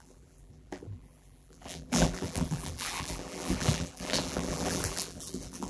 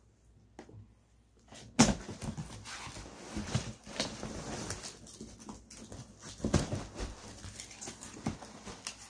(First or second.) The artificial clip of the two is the first